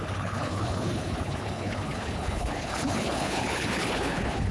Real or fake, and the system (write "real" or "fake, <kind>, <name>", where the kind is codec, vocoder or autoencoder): fake, codec, HILCodec